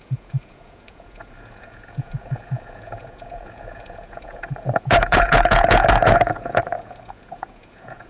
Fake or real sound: fake